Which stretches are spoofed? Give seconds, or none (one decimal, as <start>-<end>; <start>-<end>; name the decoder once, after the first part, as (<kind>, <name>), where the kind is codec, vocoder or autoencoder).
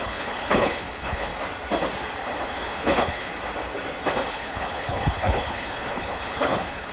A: 0.0-1.3 (codec, HILCodec); 2.4-3.3; 4.3-6.9